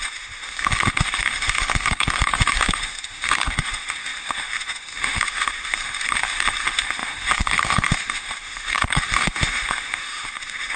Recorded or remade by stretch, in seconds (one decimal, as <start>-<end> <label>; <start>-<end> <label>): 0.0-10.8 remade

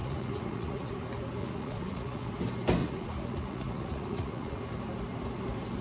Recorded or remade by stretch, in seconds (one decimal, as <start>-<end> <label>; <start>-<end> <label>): 0.0-0.9 remade; 0.9-1.4 recorded; 1.4-2.3 remade; 2.3-2.8 recorded; 2.8-4.6 remade; 4.6-5.8 recorded

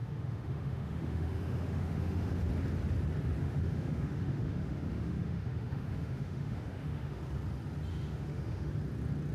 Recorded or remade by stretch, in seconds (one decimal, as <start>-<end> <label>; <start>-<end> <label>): 0.0-2.5 remade; 2.5-3.4 recorded; 3.4-7.2 remade; 7.2-7.9 recorded; 7.9-8.7 remade; 8.7-9.3 recorded